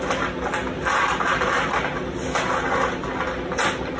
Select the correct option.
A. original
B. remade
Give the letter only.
A